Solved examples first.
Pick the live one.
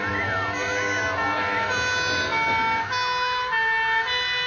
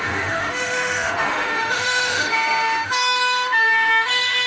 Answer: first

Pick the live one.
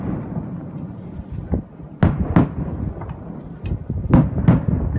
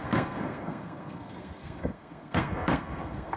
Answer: first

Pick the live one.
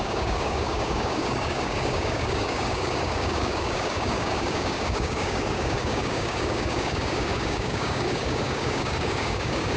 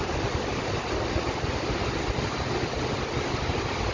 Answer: second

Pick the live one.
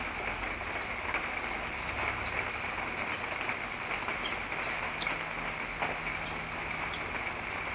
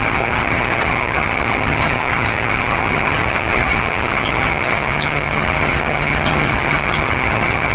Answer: first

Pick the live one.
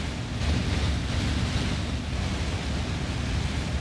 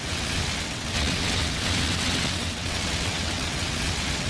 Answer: first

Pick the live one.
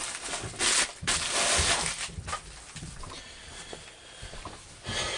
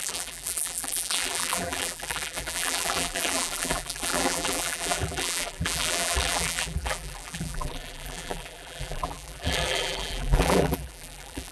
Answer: first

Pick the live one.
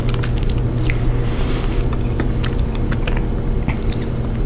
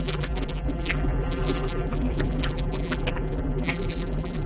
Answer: first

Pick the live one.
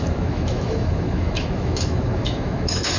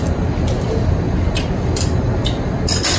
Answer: second